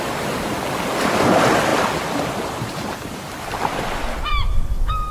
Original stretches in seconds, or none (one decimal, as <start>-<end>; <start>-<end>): 0.0-5.1